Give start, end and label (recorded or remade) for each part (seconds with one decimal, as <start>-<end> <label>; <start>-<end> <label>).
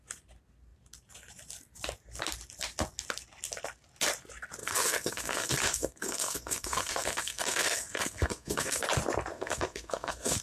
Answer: 0.0-4.6 recorded; 4.6-8.8 remade; 8.8-9.3 recorded; 9.3-10.4 remade